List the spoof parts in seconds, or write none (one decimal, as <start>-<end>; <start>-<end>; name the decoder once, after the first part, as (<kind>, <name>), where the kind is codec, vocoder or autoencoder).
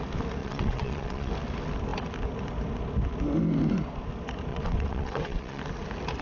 0.4-1.3 (vocoder, WaveNeXt); 4.5-5.6